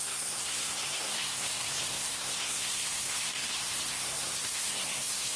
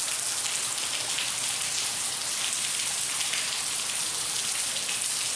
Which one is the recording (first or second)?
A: second